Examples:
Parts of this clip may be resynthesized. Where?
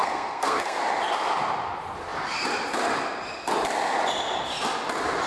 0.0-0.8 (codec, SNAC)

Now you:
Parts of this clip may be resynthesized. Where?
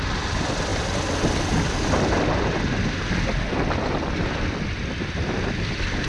none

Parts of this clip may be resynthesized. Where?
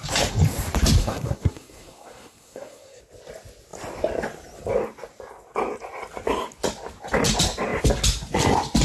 1.0-3.0 (codec, SNAC)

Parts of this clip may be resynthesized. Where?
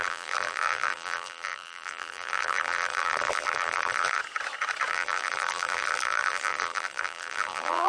0.0-4.2 (vocoder, BigVGAN v2); 4.9-7.9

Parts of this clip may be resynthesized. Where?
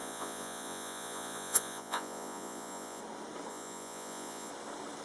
0.0-3.0 (vocoder, Vocos); 3.5-4.5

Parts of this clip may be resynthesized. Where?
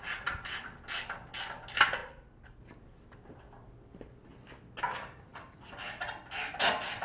none